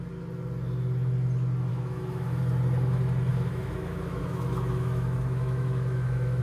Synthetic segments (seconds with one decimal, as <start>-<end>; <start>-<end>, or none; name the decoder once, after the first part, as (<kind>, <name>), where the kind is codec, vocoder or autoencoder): 1.7-2.4 (autoencoder, DAC-VAE); 3.3-6.4